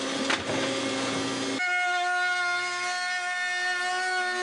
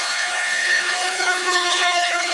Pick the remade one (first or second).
second